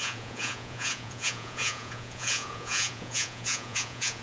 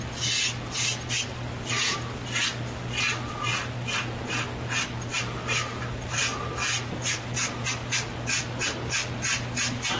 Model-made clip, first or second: first